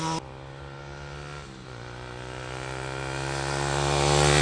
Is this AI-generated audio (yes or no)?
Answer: no